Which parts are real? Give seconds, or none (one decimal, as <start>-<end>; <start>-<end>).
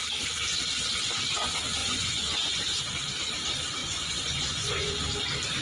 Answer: 0.0-1.8; 2.8-3.8; 5.0-5.6